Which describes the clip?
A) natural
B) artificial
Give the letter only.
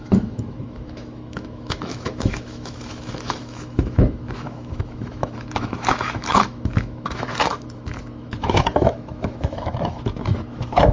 B